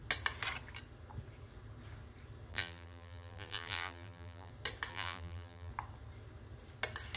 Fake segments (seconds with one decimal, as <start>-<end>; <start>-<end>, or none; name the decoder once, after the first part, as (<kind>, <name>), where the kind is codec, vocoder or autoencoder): 2.5-4.5 (vocoder, BigVGAN v2); 4.9-5.7